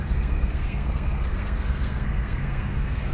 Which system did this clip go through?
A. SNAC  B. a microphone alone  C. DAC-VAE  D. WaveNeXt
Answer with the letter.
A